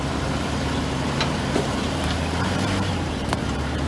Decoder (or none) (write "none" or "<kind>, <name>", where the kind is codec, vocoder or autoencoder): vocoder, BigVGAN v2